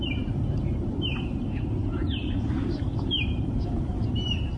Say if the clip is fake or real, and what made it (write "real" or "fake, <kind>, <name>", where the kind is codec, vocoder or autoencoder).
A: fake, vocoder, BigVGAN v2